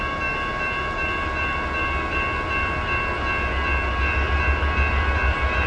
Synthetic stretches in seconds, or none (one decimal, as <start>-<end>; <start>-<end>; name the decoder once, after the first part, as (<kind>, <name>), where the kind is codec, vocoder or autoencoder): none